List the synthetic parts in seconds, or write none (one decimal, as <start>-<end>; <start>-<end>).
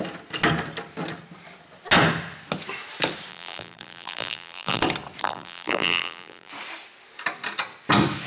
3.3-4.8; 5.2-6.5